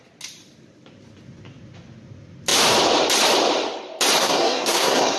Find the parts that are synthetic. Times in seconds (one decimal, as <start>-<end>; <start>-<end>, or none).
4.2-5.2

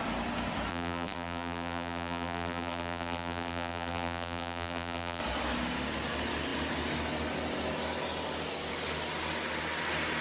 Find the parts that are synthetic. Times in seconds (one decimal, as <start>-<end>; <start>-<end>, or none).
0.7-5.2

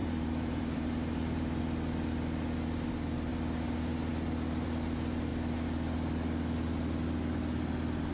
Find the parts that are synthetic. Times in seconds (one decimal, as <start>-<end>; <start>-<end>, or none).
0.0-1.6

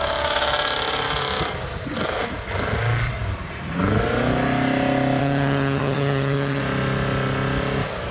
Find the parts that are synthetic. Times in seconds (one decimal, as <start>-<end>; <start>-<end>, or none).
5.2-6.6